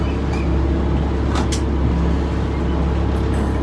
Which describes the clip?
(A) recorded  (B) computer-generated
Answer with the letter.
A